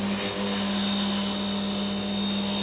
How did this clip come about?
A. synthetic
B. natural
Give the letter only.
B